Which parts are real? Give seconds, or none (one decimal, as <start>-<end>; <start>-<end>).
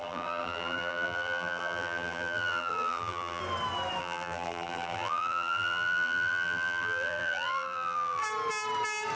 3.4-4.0; 8.2-9.2